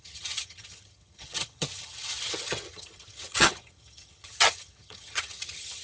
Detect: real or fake fake